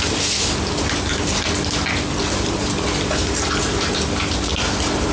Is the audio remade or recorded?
recorded